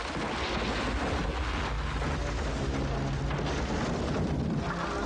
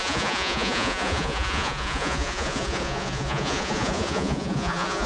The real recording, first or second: first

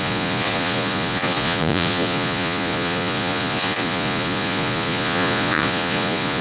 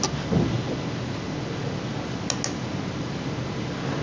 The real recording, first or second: second